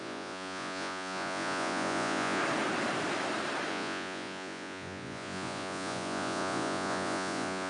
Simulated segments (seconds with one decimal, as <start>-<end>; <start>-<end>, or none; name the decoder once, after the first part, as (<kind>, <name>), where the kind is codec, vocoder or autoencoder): 0.0-2.4 (vocoder, Vocos); 3.7-7.7